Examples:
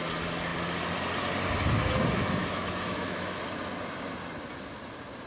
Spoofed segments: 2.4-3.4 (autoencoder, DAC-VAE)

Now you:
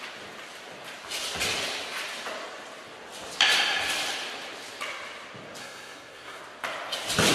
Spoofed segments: 5.6-6.4 (codec, SNAC)

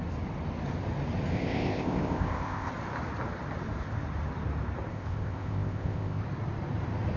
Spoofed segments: 1.3-2.7 (codec, ZipCodec); 4.9-6.2

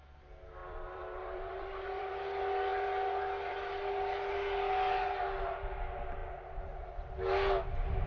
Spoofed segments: 0.6-2.1 (vocoder, BigVGAN v2)